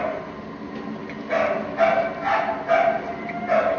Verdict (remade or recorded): recorded